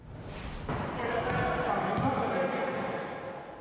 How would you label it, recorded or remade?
recorded